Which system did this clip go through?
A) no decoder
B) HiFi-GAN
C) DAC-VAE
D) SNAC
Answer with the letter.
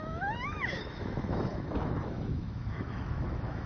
C